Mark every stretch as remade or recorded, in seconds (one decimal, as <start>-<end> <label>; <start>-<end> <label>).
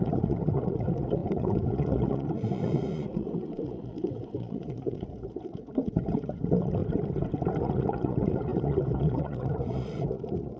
0.0-6.8 remade; 6.8-7.6 recorded; 7.6-10.6 remade